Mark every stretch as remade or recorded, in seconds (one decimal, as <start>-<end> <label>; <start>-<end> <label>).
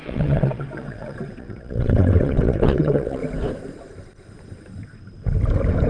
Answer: 0.0-3.2 remade; 3.2-5.9 recorded